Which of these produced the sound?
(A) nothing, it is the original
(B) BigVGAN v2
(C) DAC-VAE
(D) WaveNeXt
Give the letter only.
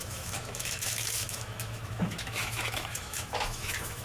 C